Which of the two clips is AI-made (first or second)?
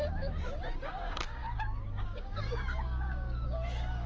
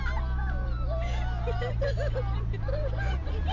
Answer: first